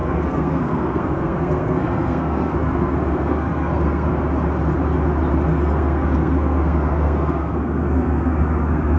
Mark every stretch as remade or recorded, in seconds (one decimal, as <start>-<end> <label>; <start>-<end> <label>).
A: 0.0-4.1 remade; 4.1-5.5 recorded; 5.5-9.0 remade